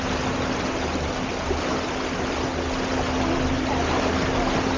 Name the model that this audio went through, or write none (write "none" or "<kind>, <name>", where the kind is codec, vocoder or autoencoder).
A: none